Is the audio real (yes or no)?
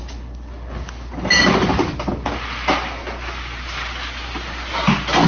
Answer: yes